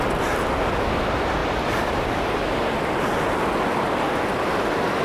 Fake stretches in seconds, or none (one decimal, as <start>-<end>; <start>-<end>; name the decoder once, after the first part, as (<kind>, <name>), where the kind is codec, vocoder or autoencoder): 1.4-1.9 (vocoder, BigVGAN v2)